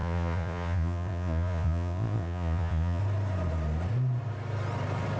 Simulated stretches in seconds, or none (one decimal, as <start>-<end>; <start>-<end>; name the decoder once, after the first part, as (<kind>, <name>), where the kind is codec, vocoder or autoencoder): 0.0-3.0 (vocoder, Vocos)